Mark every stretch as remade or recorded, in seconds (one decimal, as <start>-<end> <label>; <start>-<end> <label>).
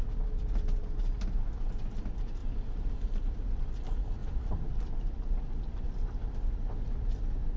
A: 0.0-2.4 recorded; 2.4-3.3 remade; 3.3-4.2 recorded; 4.2-5.4 remade; 5.4-7.6 recorded